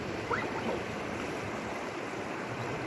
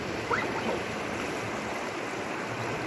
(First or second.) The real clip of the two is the second